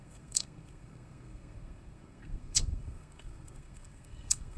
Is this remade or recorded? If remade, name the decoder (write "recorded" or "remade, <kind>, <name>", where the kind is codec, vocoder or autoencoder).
remade, codec, SNAC